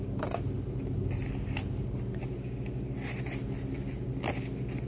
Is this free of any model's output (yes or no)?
yes